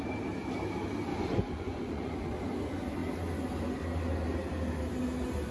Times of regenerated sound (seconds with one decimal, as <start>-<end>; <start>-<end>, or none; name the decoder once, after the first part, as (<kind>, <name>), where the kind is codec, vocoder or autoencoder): 1.1-2.4 (vocoder, Vocos)